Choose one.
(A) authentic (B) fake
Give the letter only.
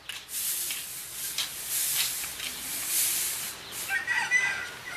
A